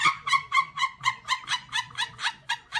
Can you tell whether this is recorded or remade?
remade